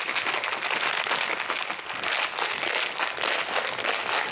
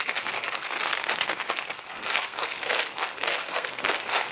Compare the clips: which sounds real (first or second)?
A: first